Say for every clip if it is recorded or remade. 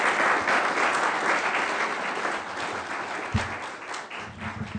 recorded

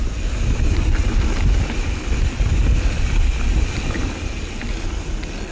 recorded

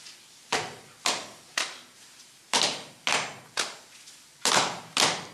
recorded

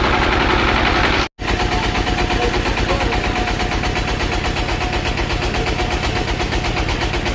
recorded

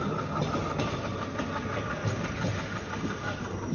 recorded